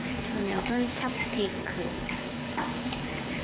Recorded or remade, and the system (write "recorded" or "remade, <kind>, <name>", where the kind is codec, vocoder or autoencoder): remade, codec, DAC